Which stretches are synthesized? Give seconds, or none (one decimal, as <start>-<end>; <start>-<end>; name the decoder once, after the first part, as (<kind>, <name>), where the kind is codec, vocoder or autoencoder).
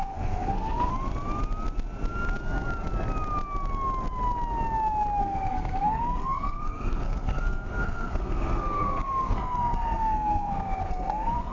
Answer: 0.0-0.9 (codec, SNAC); 5.2-11.5